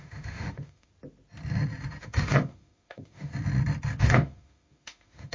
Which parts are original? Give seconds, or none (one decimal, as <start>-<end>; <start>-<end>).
0.9-2.0; 3.3-4.0